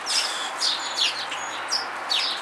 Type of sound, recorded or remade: recorded